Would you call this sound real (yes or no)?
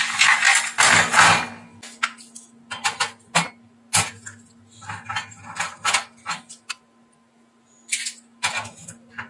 yes